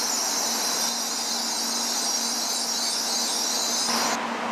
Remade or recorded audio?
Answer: recorded